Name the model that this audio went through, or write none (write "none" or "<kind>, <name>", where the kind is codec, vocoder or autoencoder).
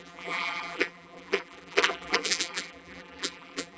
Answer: vocoder, BigVGAN v2